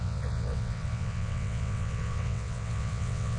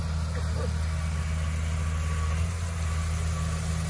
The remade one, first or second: first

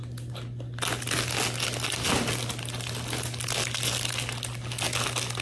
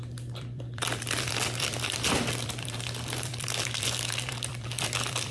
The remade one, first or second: second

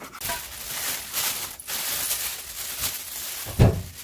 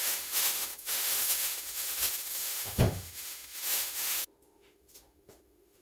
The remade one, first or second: second